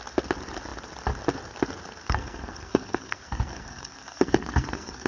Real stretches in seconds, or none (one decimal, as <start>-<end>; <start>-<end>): 0.0-2.0